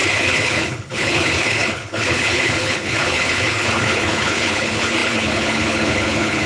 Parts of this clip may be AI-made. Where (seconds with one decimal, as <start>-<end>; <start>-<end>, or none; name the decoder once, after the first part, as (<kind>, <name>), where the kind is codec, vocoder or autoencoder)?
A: 0.0-6.5 (codec, HILCodec)